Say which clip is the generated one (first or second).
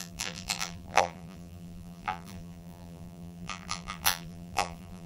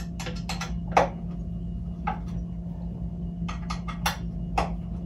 first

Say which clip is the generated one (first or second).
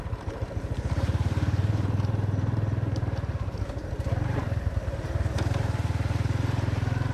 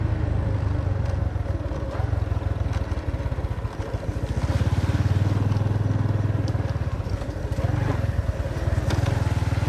first